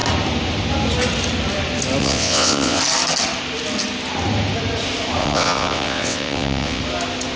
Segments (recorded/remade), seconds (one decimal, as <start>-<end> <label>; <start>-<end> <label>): 0.0-2.0 recorded; 2.0-2.8 remade; 2.8-5.2 recorded; 5.2-6.8 remade; 6.8-7.4 recorded